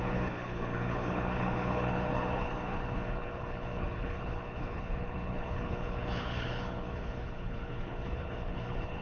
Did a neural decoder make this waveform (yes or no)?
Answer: yes